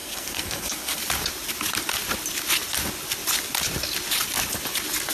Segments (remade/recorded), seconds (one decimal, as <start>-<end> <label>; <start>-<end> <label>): 0.0-1.0 remade; 1.0-5.1 recorded